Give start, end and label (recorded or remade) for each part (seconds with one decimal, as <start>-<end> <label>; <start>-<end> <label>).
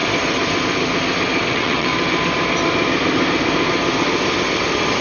0.0-1.5 recorded; 1.5-1.9 remade; 1.9-5.0 recorded